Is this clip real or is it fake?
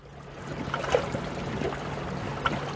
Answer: real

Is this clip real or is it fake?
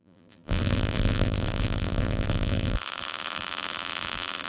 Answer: fake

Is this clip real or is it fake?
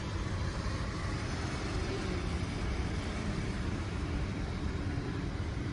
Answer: fake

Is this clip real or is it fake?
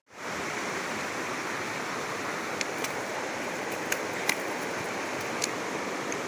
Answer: real